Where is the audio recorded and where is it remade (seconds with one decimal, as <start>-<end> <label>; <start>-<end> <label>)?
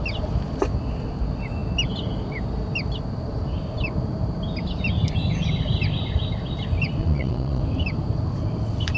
0.0-7.0 recorded; 7.0-7.6 remade; 7.6-9.0 recorded